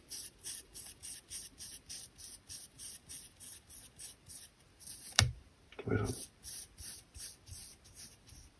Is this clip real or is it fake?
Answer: fake